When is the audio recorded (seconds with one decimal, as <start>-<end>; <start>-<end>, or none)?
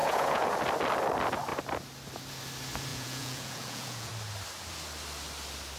0.6-2.9; 4.1-5.8